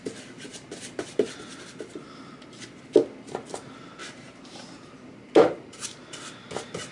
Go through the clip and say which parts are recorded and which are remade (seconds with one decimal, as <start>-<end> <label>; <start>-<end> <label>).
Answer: 0.0-4.0 recorded; 4.0-6.2 remade; 6.2-6.9 recorded